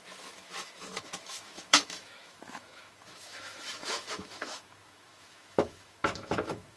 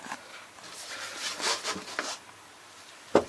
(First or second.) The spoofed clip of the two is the first